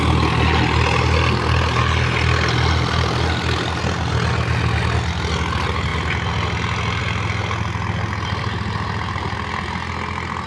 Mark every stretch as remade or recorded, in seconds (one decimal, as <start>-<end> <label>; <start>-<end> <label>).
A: 0.0-10.5 recorded